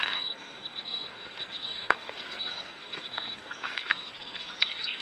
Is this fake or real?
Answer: fake